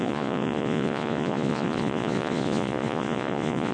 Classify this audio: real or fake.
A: fake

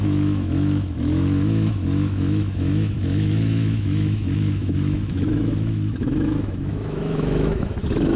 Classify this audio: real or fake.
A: fake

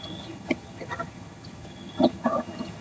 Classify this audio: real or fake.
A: fake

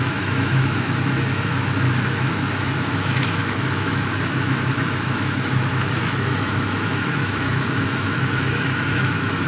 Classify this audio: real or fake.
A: fake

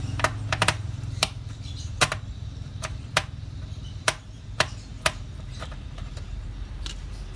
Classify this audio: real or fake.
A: fake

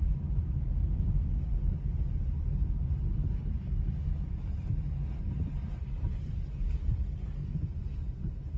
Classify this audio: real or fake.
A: real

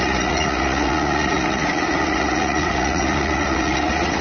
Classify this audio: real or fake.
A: fake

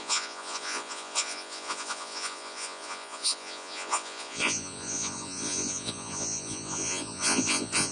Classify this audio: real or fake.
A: fake